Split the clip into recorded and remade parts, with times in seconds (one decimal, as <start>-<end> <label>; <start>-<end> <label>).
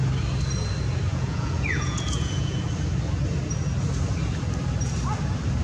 0.0-1.1 recorded; 1.1-2.7 remade; 2.7-5.6 recorded